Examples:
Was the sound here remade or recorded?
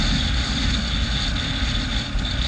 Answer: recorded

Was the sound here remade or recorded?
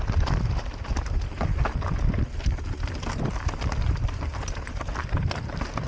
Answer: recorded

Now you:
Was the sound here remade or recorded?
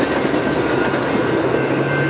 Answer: recorded